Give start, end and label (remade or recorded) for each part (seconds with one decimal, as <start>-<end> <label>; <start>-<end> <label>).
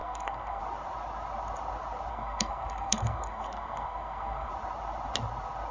0.0-0.6 remade; 0.6-2.1 recorded; 2.1-4.5 remade; 4.5-5.7 recorded